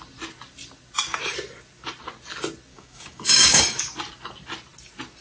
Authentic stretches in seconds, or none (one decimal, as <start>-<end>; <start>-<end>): 0.0-2.7; 3.6-5.2